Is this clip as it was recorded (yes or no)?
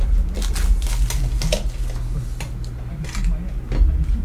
yes